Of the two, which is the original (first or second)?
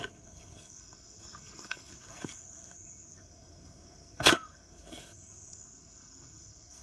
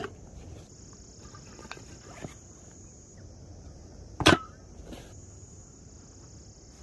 second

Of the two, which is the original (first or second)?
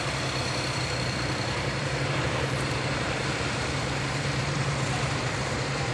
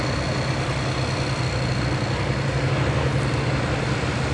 second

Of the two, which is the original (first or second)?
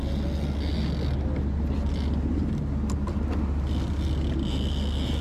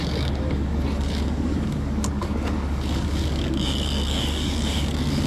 first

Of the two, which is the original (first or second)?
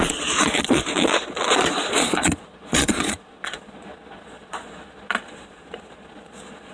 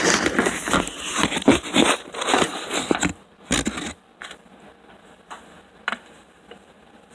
second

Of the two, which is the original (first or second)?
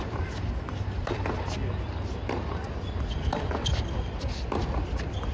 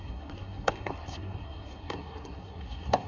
first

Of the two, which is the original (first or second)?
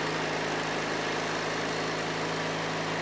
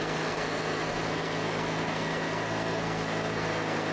first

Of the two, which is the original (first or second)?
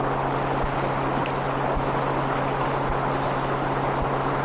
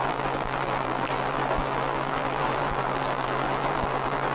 first